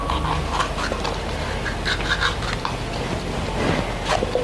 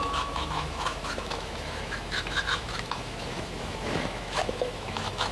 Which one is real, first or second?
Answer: first